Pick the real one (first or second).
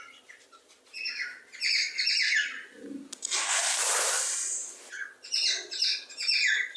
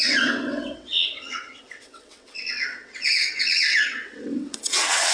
first